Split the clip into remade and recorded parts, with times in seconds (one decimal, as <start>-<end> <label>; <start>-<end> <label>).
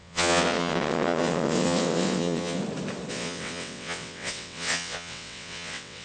0.0-2.6 remade; 2.6-3.1 recorded; 3.1-6.0 remade